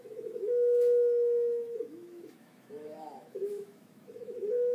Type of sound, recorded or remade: remade